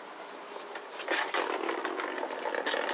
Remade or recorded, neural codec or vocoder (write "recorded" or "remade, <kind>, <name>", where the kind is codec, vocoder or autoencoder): recorded